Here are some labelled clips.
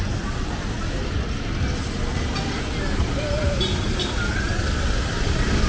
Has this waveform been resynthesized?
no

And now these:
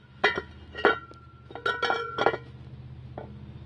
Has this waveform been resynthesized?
no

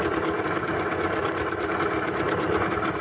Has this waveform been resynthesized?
no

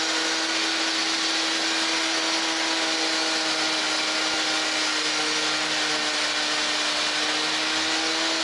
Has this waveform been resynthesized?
no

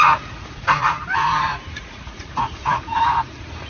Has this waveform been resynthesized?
yes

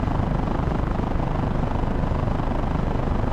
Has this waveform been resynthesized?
no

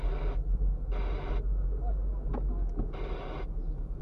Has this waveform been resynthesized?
no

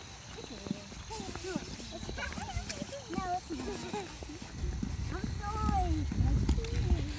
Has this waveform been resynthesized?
no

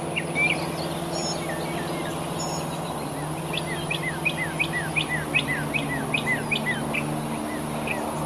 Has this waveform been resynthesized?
no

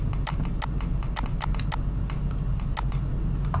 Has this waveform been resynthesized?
no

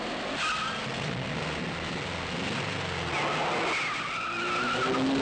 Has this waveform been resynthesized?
no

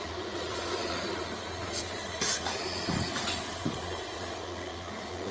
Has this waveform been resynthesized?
yes